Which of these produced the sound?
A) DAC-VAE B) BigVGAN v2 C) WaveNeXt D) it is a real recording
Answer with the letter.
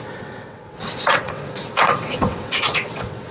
C